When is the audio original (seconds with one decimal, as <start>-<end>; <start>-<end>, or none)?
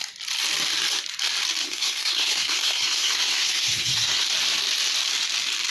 0.0-1.6; 4.2-5.7